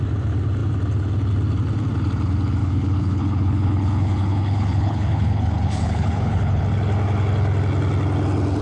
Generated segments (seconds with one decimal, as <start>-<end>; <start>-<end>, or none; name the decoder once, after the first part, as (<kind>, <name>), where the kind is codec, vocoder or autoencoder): 2.6-6.6 (codec, HILCodec)